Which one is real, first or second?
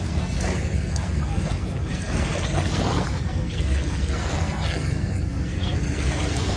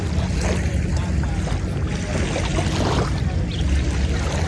second